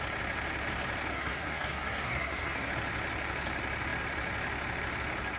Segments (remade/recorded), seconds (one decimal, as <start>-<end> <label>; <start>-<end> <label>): 0.0-1.1 recorded; 1.1-2.7 remade; 2.7-5.4 recorded